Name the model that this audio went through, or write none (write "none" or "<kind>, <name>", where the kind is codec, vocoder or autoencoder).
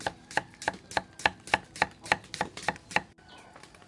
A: none